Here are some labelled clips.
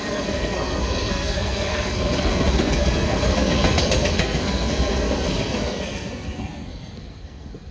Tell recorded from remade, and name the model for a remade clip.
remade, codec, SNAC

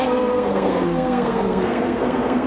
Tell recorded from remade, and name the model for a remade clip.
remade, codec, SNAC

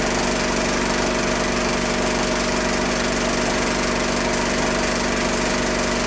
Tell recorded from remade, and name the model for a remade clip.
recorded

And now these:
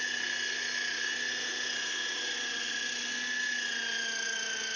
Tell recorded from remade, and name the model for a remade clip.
recorded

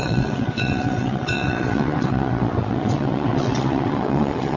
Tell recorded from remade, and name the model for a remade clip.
remade, vocoder, WaveNeXt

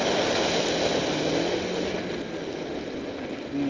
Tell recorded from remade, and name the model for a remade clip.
recorded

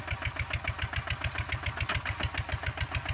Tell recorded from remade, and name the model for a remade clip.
recorded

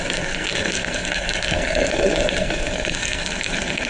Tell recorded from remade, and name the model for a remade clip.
remade, codec, SNAC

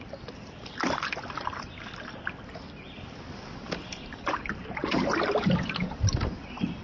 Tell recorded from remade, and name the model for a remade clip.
recorded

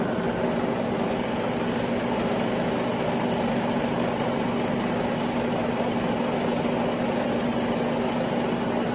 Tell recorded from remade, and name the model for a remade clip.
recorded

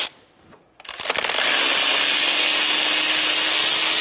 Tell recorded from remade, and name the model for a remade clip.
recorded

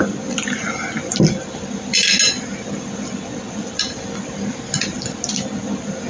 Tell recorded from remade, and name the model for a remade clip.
recorded